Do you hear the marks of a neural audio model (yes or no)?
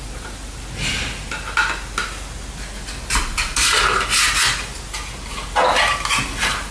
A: no